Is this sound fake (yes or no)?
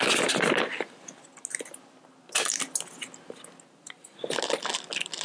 no